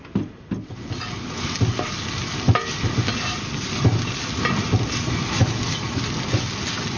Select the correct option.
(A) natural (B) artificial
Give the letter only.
A